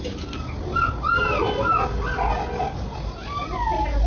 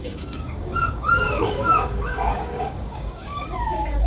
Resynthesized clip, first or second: second